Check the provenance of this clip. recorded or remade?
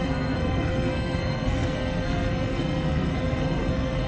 remade